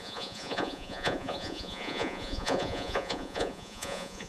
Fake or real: fake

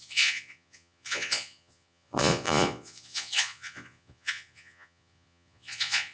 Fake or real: fake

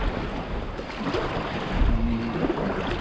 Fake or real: real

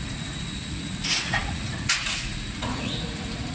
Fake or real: fake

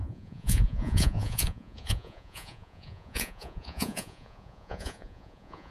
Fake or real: fake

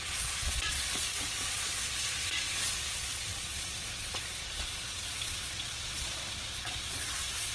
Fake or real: fake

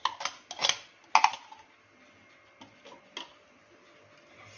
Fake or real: real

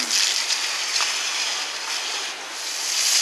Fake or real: real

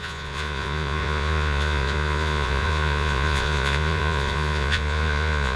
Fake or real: fake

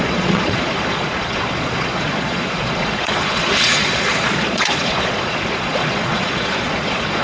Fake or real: fake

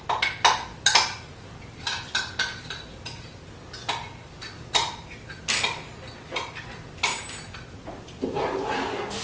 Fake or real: real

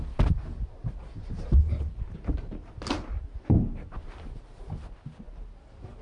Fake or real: real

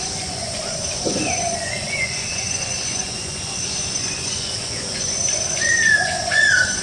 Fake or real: fake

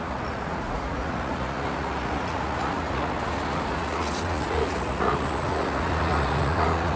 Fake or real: fake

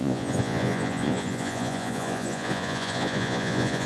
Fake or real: fake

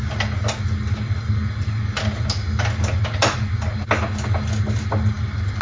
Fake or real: real